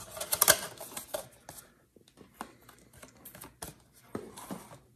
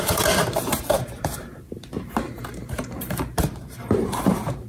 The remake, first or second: second